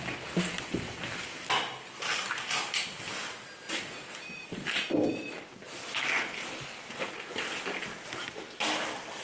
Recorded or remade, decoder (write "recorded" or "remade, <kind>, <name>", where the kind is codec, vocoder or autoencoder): recorded